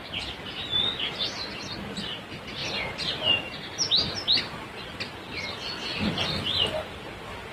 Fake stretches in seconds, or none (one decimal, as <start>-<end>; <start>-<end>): none